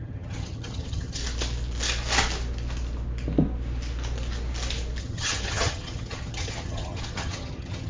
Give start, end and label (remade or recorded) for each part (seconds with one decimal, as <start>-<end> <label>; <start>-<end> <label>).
0.0-1.2 remade; 1.2-5.0 recorded; 5.0-7.9 remade